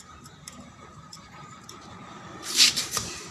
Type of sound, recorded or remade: remade